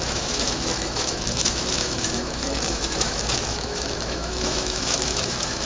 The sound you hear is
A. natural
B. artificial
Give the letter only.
B